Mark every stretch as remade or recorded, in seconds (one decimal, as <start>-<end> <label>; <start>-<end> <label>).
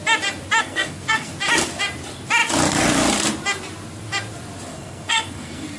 0.0-0.6 recorded; 0.6-1.3 remade; 1.3-4.7 recorded; 4.7-5.8 remade